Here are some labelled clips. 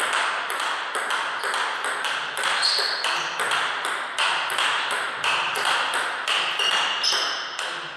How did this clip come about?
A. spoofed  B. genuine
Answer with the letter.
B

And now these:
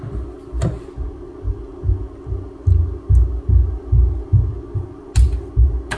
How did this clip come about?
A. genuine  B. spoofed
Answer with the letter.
A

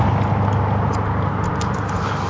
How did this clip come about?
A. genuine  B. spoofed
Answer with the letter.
A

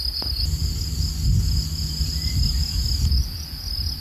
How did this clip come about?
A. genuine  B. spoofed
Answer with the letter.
A